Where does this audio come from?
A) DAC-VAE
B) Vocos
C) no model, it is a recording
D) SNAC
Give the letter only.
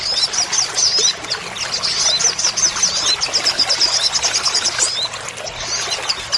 C